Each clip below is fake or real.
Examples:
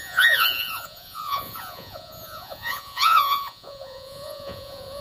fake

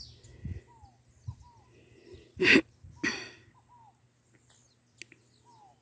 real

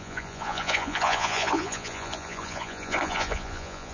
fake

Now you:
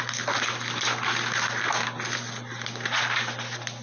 real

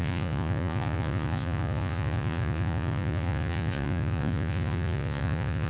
fake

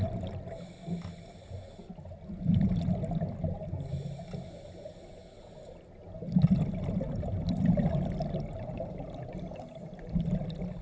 real